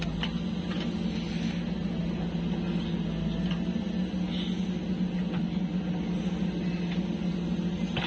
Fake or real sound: real